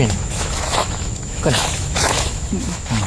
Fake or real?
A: fake